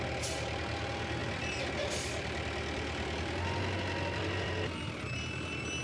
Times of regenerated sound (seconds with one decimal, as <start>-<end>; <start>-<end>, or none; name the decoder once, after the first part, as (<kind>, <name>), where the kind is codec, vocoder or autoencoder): 1.2-4.5 (vocoder, BigVGAN v2)